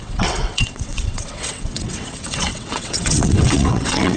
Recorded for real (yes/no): no